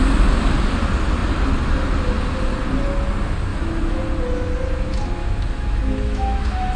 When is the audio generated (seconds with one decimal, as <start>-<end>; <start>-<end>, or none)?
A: 3.5-4.0; 5.2-6.8